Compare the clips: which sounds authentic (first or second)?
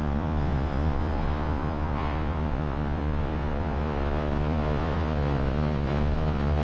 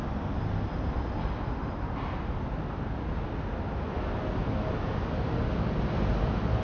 second